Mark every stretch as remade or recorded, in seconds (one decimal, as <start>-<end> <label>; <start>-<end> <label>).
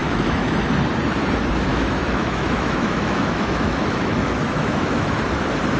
0.0-0.5 remade; 0.5-1.7 recorded; 1.7-5.2 remade; 5.2-5.8 recorded